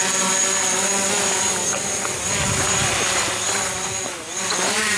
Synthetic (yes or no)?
no